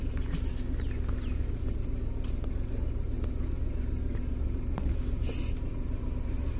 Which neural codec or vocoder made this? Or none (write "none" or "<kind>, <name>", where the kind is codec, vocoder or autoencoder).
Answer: none